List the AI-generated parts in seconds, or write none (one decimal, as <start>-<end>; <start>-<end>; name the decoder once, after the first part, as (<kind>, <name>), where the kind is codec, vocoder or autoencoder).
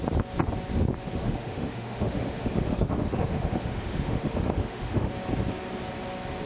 1.2-5.1 (autoencoder, DAC-VAE)